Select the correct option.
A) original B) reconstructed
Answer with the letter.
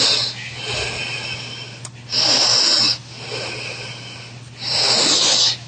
A